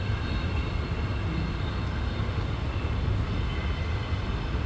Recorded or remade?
recorded